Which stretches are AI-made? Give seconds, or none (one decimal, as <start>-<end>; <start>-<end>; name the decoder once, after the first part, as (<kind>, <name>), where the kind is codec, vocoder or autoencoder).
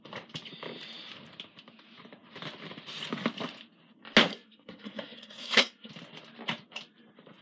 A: 4.3-5.9 (codec, SNAC)